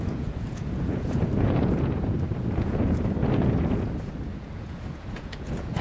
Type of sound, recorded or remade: remade